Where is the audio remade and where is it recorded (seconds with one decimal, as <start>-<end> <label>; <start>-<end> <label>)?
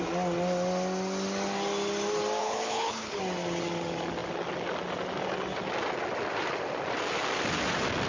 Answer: 0.0-2.4 recorded; 2.4-3.2 remade; 3.2-8.1 recorded